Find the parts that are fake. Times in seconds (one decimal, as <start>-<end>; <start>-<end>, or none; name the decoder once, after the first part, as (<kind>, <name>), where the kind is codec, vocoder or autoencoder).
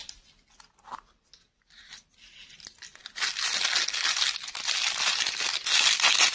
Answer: none